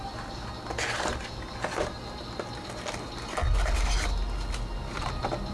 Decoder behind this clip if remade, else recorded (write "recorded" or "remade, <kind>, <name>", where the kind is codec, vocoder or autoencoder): recorded